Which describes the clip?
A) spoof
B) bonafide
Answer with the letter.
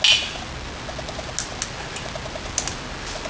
B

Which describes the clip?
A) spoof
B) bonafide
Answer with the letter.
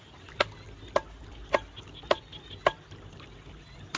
B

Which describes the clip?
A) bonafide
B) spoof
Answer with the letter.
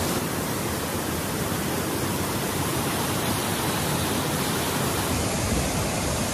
B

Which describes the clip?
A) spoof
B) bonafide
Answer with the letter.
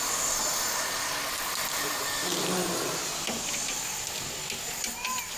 B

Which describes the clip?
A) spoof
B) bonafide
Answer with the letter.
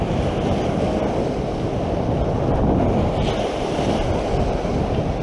B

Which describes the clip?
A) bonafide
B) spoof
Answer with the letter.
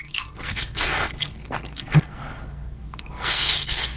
B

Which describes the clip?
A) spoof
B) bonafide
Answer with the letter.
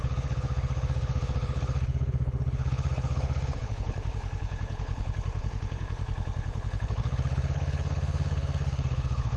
A